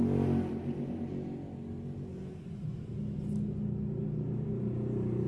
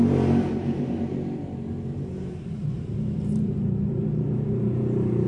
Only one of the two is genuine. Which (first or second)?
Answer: first